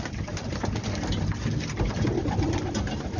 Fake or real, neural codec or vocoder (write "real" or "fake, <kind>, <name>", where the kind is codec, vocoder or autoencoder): real